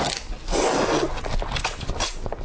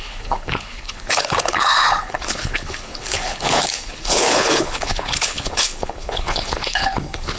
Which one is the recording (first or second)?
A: first